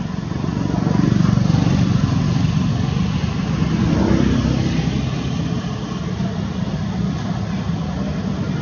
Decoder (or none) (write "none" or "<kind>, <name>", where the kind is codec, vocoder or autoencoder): none